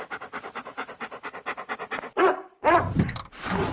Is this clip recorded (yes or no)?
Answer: yes